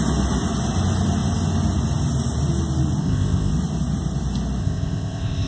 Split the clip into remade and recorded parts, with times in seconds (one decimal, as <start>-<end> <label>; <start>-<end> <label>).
0.0-3.0 recorded; 3.0-3.5 remade; 3.5-4.6 recorded; 4.6-5.5 remade